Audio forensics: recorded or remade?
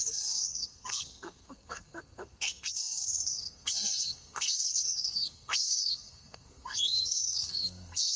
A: remade